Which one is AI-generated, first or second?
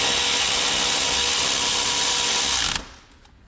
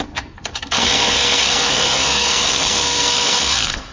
second